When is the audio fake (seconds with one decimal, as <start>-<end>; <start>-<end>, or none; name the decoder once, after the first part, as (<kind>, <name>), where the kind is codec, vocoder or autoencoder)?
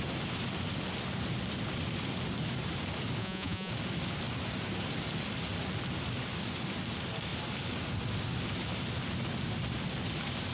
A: 3.2-3.7 (vocoder, Vocos)